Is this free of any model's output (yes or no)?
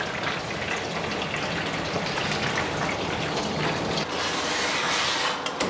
yes